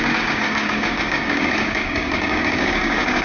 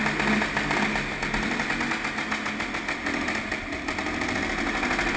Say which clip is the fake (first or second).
first